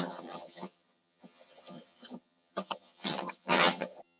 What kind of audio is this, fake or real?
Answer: fake